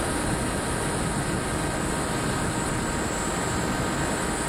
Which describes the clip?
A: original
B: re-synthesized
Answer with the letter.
A